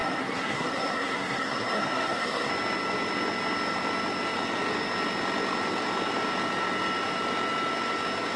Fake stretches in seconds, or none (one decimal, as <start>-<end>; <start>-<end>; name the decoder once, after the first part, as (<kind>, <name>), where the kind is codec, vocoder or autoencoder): 0.0-2.5 (codec, SNAC)